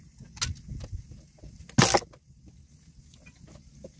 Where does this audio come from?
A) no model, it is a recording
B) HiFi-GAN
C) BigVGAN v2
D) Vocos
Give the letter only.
A